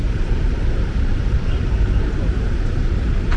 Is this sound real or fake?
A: fake